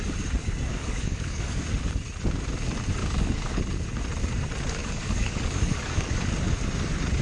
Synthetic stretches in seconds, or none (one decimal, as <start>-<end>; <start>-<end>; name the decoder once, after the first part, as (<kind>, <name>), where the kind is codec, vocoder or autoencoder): 0.7-1.6 (codec, DAC); 3.0-3.6; 4.8-6.2